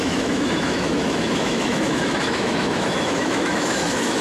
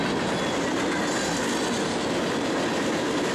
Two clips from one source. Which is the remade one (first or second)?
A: first